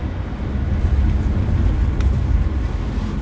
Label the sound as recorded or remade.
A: recorded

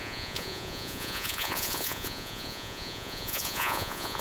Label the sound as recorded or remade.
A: remade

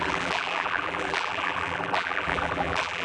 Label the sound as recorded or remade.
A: remade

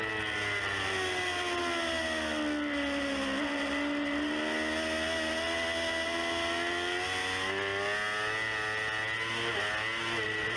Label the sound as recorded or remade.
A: recorded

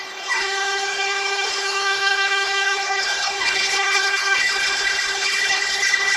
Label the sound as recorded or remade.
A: remade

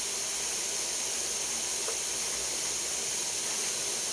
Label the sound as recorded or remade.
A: remade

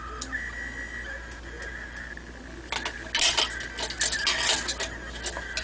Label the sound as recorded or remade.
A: recorded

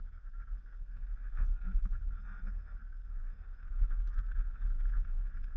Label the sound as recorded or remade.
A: remade